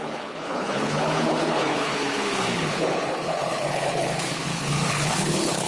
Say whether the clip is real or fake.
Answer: fake